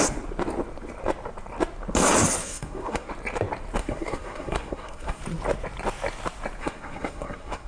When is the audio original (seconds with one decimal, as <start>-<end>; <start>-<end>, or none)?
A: 0.0-2.4; 3.1-3.8; 5.2-6.6